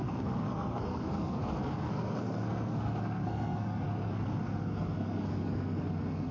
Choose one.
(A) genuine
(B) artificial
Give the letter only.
B